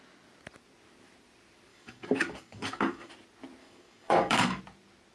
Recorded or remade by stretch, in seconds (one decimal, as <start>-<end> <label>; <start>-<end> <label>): 0.0-1.7 recorded; 1.7-3.1 remade; 3.1-3.6 recorded; 3.6-4.6 remade; 4.6-5.1 recorded